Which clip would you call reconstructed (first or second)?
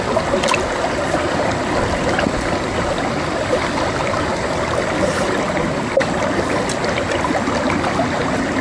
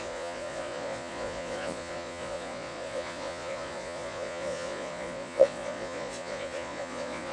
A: second